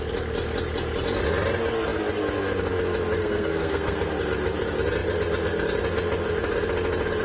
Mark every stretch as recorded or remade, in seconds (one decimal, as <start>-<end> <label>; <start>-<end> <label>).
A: 0.0-3.2 recorded; 3.2-4.0 remade; 4.0-7.2 recorded